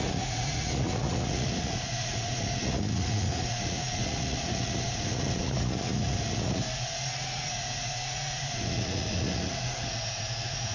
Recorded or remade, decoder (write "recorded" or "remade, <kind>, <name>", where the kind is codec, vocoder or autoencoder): remade, vocoder, Vocos